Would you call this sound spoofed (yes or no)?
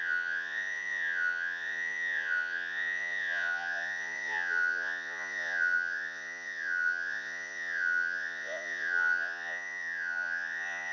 yes